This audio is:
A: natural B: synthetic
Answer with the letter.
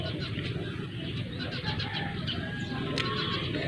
A